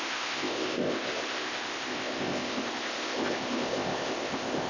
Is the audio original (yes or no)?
no